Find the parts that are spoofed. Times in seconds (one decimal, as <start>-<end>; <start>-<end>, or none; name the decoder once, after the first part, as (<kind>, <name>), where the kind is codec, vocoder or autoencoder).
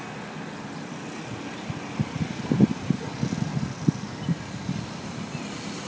none